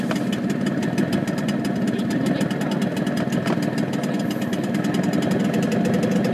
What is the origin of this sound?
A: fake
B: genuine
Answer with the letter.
B